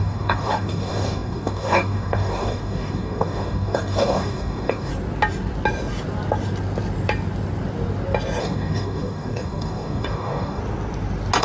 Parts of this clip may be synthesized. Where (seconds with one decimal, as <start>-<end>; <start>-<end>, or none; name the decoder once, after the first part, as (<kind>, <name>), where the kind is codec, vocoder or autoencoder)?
0.0-4.9 (codec, DAC); 8.4-10.6